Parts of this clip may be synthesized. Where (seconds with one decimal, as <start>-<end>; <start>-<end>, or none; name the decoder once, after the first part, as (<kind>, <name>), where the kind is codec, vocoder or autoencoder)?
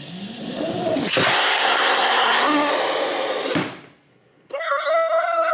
1.3-2.7 (codec, SNAC); 4.1-5.5